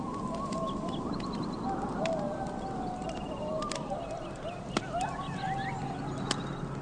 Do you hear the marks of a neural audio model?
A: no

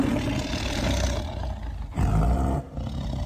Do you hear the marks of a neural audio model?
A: no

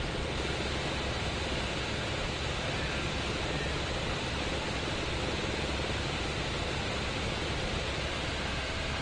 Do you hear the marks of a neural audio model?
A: no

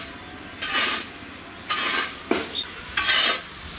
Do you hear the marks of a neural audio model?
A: no